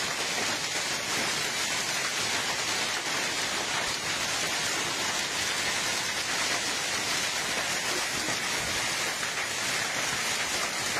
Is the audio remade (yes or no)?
no